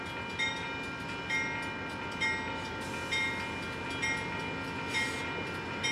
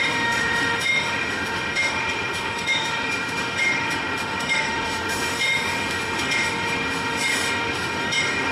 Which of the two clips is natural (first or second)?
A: first